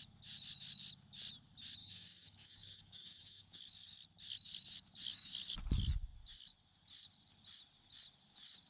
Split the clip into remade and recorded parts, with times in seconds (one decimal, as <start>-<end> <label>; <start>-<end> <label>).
0.0-1.8 recorded; 1.8-3.6 remade; 3.6-8.7 recorded